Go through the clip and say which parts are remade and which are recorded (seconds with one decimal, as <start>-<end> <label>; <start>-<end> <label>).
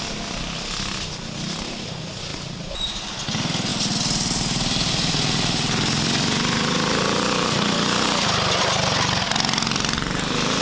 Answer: 0.0-2.3 recorded; 2.3-3.2 remade; 3.2-10.6 recorded